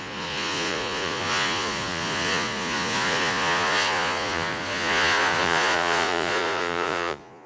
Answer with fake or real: fake